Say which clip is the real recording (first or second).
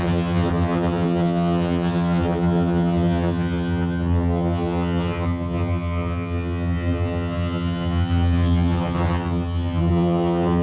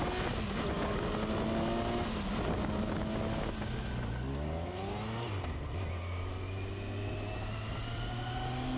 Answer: second